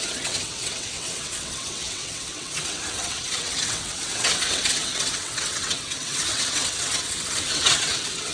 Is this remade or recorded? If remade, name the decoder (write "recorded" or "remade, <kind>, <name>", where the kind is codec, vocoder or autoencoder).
remade, vocoder, WaveNeXt